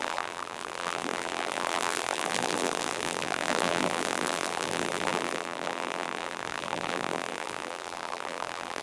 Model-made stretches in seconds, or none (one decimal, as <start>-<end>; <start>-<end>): 0.0-8.8